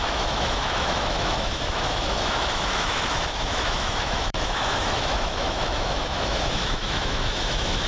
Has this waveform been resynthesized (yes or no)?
yes